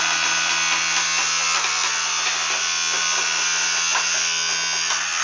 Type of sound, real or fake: real